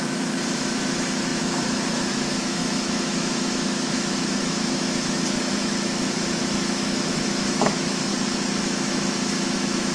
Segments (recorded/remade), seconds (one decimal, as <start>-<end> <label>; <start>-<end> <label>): 0.0-8.1 remade; 8.1-8.6 recorded; 8.6-9.9 remade